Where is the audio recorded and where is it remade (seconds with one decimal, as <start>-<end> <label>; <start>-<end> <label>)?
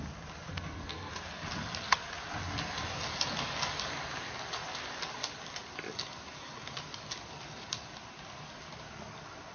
0.0-0.5 recorded; 0.5-1.1 remade; 1.1-9.5 recorded